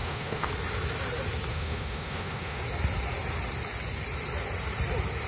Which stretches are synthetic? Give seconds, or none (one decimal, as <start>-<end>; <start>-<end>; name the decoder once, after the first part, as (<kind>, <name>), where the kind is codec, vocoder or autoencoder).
0.0-0.5 (autoencoder, DAC-VAE); 1.5-2.6